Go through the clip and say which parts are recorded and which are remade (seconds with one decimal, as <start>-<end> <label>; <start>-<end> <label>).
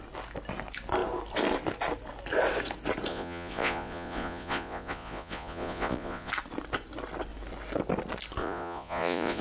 0.0-3.1 recorded; 3.1-6.3 remade; 6.3-8.4 recorded; 8.4-9.4 remade